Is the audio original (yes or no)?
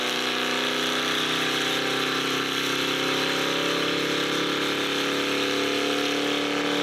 yes